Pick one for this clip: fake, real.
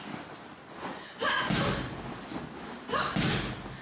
real